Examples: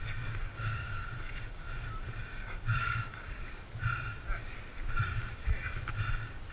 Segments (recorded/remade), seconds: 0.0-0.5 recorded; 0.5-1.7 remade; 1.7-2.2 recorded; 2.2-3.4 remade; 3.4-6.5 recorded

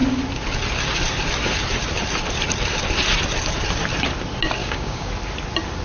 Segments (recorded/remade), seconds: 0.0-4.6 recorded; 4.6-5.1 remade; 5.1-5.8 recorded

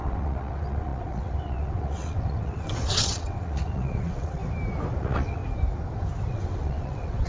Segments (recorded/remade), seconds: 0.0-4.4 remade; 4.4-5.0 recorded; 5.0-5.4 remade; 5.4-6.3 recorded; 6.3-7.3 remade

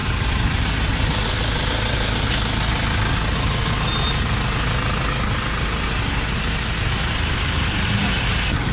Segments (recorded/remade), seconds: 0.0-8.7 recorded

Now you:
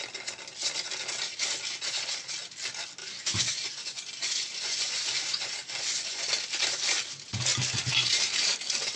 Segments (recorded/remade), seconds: 0.0-3.0 recorded; 3.0-6.3 remade; 6.3-9.0 recorded

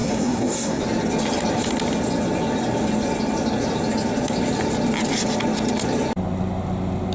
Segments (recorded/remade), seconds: 0.0-0.8 remade; 0.8-7.1 recorded

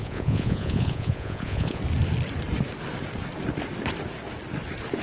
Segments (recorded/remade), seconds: 0.0-1.8 remade; 1.8-5.0 recorded